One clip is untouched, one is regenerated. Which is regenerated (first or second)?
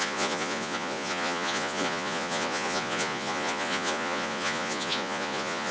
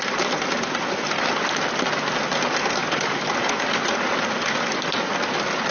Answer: first